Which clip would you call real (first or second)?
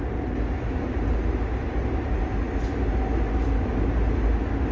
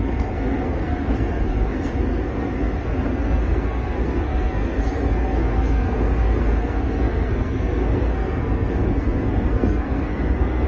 first